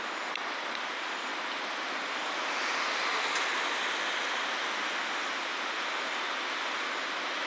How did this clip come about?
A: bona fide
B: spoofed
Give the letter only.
A